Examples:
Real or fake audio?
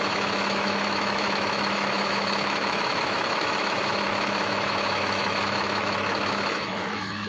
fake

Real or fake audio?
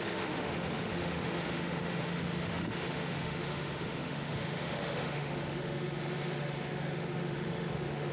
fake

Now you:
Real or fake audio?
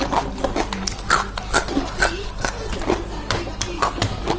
real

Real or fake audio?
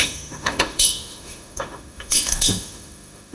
fake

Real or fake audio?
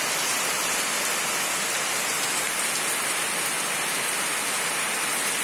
real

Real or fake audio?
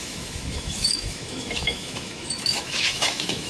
fake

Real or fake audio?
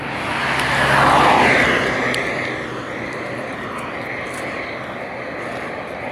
real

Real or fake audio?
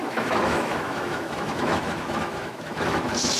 fake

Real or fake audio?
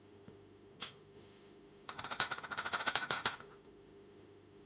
fake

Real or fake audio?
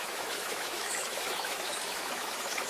fake